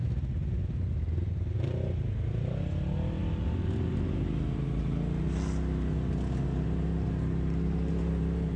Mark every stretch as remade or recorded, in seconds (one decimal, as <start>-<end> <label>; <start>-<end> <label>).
0.0-8.6 recorded

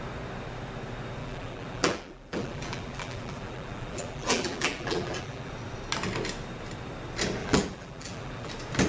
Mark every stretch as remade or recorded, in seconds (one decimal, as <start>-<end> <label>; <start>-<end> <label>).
0.0-1.2 recorded; 1.2-5.5 remade; 5.5-7.4 recorded; 7.4-8.5 remade; 8.5-8.9 recorded

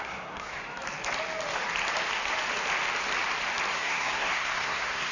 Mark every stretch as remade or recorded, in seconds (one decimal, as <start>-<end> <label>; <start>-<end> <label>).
0.0-0.6 remade; 0.6-3.7 recorded; 3.7-5.1 remade

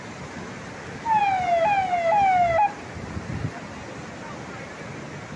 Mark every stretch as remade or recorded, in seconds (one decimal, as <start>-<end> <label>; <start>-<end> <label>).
0.0-5.4 recorded

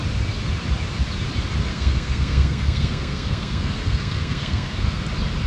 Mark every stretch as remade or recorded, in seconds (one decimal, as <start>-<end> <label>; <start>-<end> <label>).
0.0-1.7 recorded; 1.7-5.0 remade; 5.0-5.5 recorded

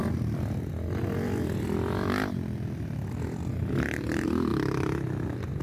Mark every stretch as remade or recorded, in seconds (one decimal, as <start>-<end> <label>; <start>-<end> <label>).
0.0-5.6 recorded

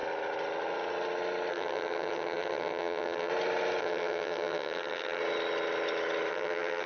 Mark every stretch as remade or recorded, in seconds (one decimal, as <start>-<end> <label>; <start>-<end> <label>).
0.0-1.5 recorded; 1.5-3.3 remade; 3.3-3.8 recorded; 3.8-5.2 remade; 5.2-6.3 recorded; 6.3-6.9 remade

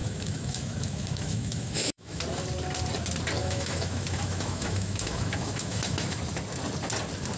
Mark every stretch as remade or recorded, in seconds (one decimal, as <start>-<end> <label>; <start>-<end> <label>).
0.0-2.2 remade; 2.2-3.4 recorded; 3.4-6.2 remade; 6.2-7.4 recorded